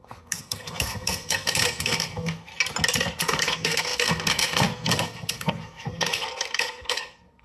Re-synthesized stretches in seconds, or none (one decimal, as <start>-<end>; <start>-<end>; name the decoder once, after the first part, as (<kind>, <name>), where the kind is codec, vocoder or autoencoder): 0.0-2.5 (codec, SNAC); 3.2-7.4